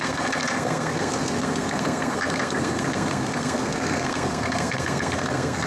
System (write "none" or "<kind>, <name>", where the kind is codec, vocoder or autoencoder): codec, SNAC